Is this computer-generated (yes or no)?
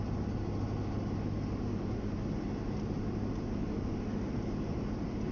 no